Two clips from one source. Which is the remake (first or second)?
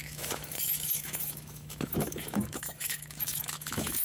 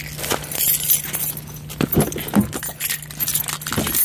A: first